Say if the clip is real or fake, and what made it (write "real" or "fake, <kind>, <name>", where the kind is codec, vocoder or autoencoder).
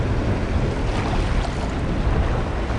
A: real